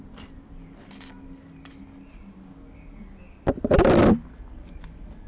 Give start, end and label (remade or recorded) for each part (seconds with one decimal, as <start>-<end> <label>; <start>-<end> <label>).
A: 0.0-5.3 recorded